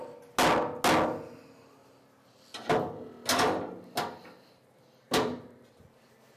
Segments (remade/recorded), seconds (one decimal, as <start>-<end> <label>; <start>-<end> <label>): 0.0-6.4 recorded